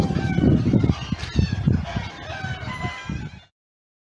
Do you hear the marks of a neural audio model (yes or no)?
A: no